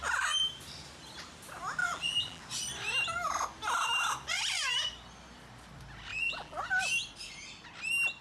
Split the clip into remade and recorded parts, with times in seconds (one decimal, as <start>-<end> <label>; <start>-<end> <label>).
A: 0.0-1.8 recorded; 1.8-2.4 remade; 2.4-6.1 recorded; 6.1-6.6 remade; 6.6-8.2 recorded